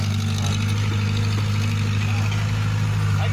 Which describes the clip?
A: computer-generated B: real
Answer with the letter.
B